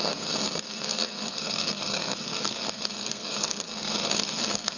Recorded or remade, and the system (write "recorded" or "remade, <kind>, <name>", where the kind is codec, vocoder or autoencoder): remade, codec, SNAC